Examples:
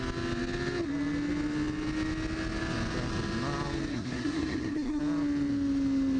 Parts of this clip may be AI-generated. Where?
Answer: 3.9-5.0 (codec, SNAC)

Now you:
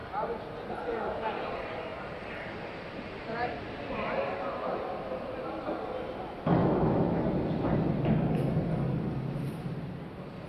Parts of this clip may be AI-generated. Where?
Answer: 6.6-7.2 (autoencoder, DAC-VAE)

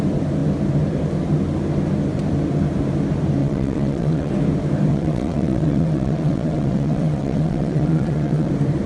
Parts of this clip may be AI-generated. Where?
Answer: 3.4-4.3 (vocoder, WaveNeXt); 4.9-8.5